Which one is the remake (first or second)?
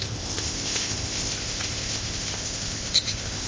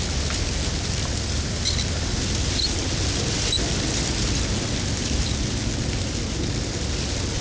first